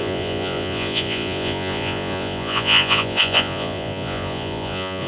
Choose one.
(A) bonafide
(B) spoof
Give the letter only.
B